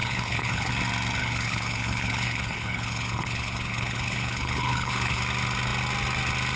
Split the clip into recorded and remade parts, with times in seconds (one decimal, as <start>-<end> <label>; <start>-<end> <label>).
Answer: 0.0-0.7 remade; 0.7-1.2 recorded; 1.2-5.2 remade; 5.2-6.6 recorded